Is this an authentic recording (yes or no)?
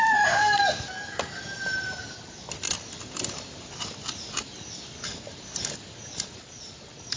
yes